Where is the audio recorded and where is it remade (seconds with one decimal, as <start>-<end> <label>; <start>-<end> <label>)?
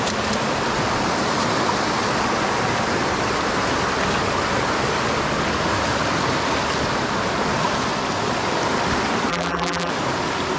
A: 0.0-9.3 recorded; 9.3-9.9 remade; 9.9-10.6 recorded